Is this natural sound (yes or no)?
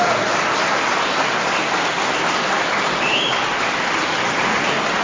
yes